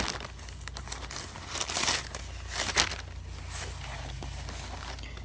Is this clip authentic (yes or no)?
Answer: yes